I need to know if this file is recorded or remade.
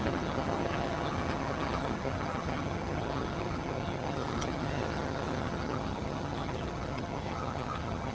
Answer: remade